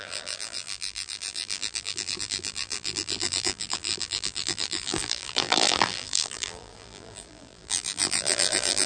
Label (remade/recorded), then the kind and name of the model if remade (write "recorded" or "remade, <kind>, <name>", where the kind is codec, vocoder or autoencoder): remade, vocoder, BigVGAN v2